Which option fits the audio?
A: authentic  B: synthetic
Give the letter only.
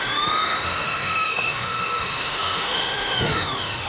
B